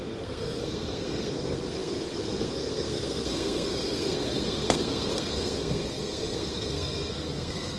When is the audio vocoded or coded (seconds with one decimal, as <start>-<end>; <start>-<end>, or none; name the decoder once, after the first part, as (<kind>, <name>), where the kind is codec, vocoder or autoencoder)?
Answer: 0.0-7.8 (codec, SNAC)